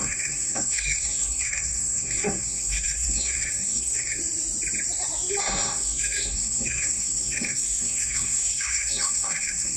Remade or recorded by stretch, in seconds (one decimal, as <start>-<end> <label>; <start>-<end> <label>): 0.0-4.2 remade; 4.2-5.4 recorded; 5.4-9.8 remade